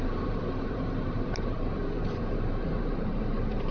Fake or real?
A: fake